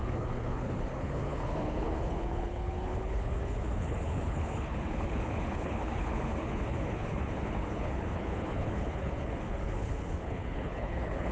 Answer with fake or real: fake